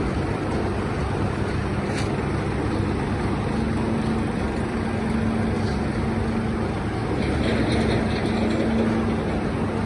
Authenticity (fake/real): real